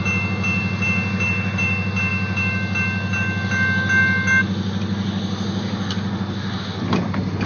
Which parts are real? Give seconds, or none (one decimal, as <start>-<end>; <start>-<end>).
0.0-7.5